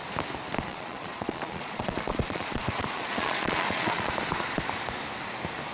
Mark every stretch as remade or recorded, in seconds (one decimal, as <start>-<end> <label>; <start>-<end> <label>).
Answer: 0.0-0.7 recorded; 0.7-4.1 remade; 4.1-5.7 recorded